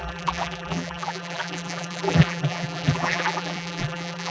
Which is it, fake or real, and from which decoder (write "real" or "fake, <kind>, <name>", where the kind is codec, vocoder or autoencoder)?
fake, vocoder, BigVGAN v2